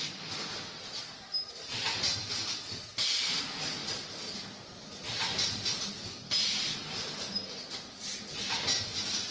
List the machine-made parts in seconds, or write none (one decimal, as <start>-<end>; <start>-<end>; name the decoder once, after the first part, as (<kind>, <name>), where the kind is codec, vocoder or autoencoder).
none